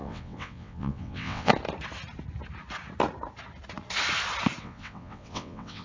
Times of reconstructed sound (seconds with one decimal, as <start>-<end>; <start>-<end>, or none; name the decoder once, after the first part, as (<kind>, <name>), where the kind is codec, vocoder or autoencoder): 0.0-1.5 (vocoder, WaveNeXt); 4.6-5.8